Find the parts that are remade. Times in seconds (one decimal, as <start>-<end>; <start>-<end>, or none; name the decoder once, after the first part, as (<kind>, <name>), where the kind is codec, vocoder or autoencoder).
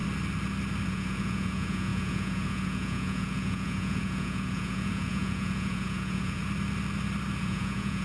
0.9-6.4 (vocoder, Vocos); 7.4-8.0